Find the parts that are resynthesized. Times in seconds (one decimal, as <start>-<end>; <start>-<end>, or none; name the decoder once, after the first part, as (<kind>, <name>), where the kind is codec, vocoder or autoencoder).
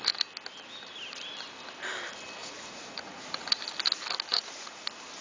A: 2.4-3.5 (vocoder, Vocos); 4.3-4.8